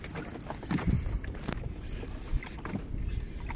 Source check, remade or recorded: recorded